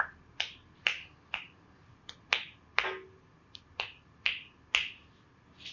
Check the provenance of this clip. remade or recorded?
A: recorded